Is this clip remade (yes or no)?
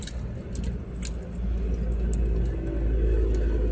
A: no